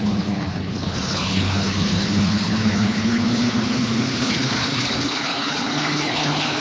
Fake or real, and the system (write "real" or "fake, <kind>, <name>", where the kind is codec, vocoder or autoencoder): fake, codec, HILCodec